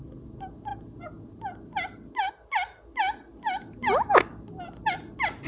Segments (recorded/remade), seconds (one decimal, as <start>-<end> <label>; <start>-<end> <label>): 0.0-5.5 recorded